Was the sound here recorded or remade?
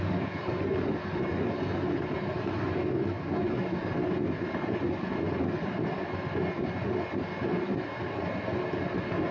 recorded